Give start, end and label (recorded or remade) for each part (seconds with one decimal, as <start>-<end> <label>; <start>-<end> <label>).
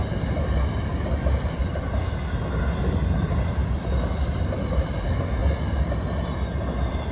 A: 0.0-1.9 remade; 1.9-3.6 recorded; 3.6-5.0 remade; 5.0-5.4 recorded; 5.4-6.5 remade; 6.5-7.1 recorded